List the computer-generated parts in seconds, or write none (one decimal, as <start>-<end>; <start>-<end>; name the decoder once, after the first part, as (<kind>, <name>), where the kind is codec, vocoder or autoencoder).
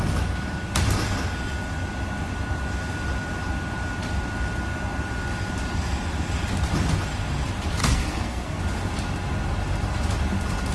7.8-8.6 (codec, SNAC)